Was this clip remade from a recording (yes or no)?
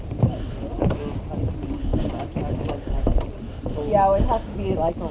no